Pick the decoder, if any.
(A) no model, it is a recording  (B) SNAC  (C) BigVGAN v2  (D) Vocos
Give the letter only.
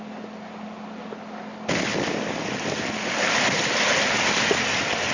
A